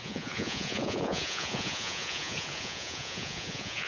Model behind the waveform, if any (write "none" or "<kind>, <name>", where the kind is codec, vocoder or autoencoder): vocoder, Vocos